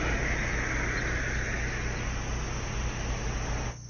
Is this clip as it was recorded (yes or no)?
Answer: yes